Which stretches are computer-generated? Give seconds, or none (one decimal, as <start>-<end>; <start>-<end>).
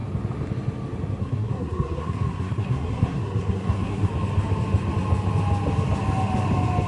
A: 1.2-4.1